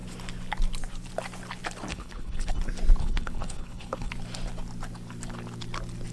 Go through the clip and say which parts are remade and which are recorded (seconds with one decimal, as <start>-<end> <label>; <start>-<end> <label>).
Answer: 0.0-1.9 recorded; 1.9-2.6 remade; 2.6-3.0 recorded; 3.0-4.1 remade; 4.1-6.1 recorded